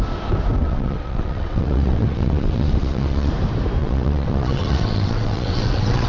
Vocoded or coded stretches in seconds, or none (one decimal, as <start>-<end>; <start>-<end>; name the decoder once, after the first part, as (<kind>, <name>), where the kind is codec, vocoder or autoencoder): 0.6-3.3 (vocoder, WaveNeXt); 3.8-6.1